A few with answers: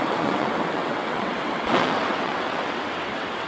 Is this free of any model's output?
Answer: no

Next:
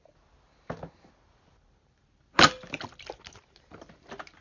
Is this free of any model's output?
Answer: yes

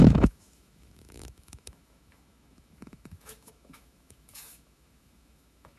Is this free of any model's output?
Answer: no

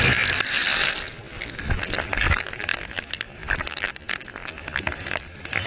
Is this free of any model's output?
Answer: yes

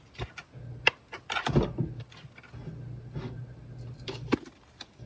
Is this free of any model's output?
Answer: yes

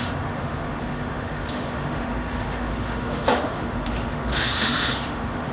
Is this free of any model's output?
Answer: no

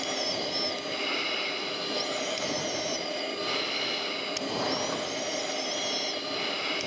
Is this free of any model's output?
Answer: yes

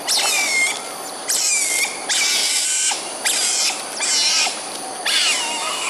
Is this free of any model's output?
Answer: yes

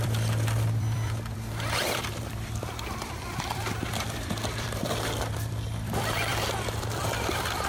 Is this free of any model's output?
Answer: no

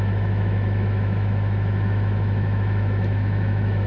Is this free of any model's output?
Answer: no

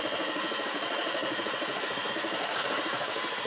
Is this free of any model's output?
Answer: no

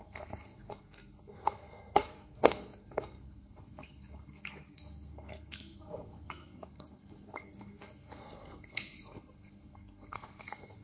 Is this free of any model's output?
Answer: no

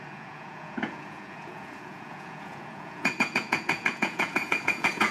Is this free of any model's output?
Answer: no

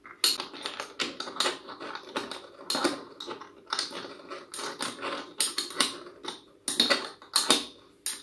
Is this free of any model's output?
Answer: yes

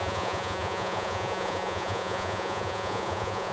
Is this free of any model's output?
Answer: no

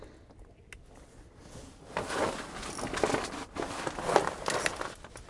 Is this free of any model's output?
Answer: yes